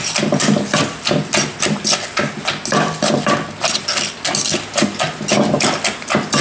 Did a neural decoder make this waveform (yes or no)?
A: no